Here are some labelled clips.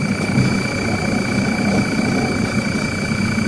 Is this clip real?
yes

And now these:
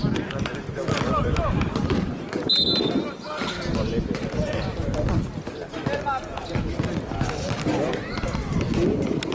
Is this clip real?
yes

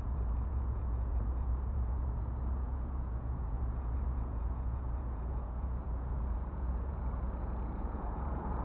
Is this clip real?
no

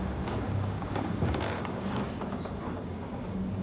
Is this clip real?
no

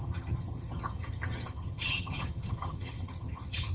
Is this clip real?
no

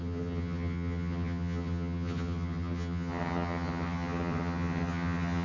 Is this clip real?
no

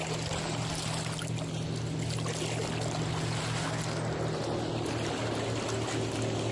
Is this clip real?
yes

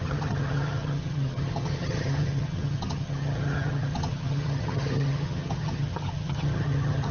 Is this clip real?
no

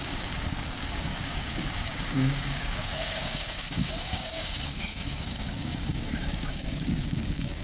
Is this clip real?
no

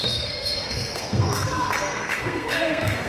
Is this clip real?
no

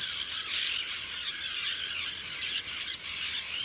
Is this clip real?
yes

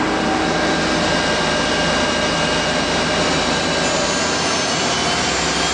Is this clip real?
yes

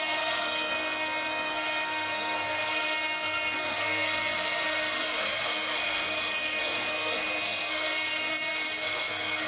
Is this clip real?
no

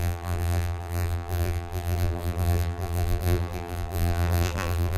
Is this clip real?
no